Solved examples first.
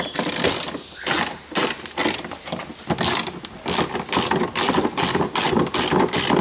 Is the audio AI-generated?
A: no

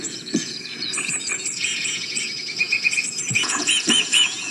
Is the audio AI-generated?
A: yes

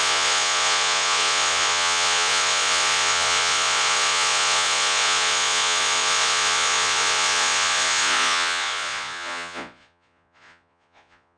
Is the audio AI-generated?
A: yes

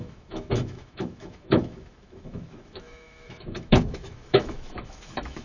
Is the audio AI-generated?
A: yes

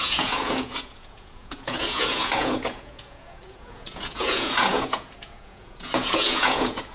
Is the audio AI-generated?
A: yes